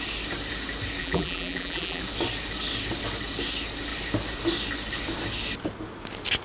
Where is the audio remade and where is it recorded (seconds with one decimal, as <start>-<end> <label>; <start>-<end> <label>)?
0.0-1.0 recorded; 1.0-2.0 remade; 2.0-6.4 recorded

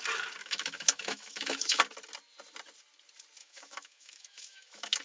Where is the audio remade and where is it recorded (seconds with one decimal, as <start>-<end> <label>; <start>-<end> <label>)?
0.0-0.4 recorded; 0.4-1.8 remade; 1.8-3.4 recorded; 3.4-5.0 remade

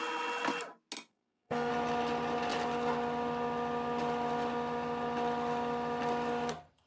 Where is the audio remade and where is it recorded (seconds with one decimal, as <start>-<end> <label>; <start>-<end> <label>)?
0.0-1.1 recorded; 1.1-1.7 remade; 1.7-6.9 recorded

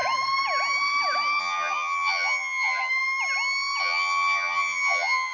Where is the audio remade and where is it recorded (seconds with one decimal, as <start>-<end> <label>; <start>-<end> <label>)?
0.0-1.4 recorded; 1.4-2.9 remade; 2.9-3.8 recorded; 3.8-5.3 remade

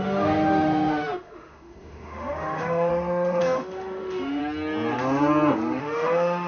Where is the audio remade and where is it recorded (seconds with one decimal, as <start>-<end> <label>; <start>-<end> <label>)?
0.0-2.9 remade; 2.9-3.4 recorded; 3.4-4.4 remade; 4.4-5.8 recorded; 5.8-6.5 remade

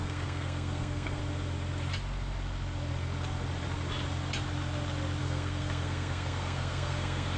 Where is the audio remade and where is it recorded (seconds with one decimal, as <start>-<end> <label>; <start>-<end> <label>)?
0.0-1.2 remade; 1.2-5.2 recorded; 5.2-7.4 remade